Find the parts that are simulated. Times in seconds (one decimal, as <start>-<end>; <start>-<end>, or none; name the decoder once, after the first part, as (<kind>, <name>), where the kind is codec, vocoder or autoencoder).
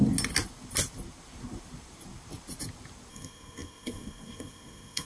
3.1-5.1 (codec, SNAC)